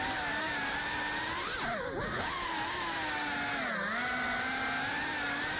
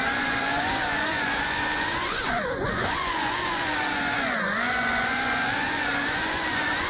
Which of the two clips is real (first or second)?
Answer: first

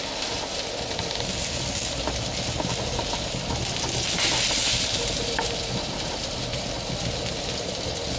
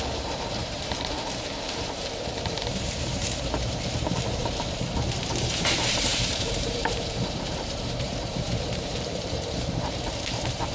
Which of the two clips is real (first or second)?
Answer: first